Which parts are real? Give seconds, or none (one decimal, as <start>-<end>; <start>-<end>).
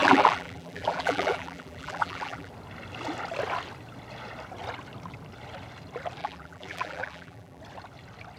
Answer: 2.5-6.2; 7.6-8.4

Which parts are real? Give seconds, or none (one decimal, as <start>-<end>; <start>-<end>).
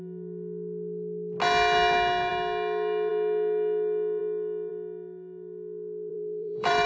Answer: 0.0-6.1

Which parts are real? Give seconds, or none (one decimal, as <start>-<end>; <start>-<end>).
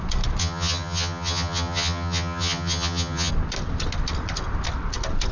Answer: 0.0-0.4; 3.3-5.3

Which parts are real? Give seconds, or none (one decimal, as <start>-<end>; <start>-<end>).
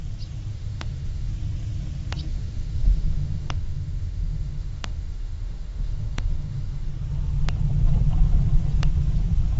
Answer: 0.0-0.5; 1.3-2.3; 6.9-9.6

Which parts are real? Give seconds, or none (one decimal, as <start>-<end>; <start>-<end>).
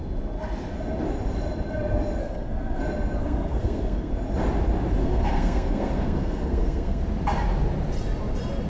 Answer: 0.0-2.2; 2.8-3.2; 4.1-5.0; 7.0-8.7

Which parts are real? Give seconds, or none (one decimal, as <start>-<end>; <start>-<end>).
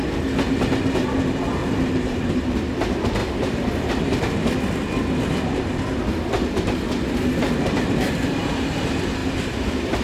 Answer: 0.0-1.6; 2.4-3.2; 3.9-7.3; 8.5-9.2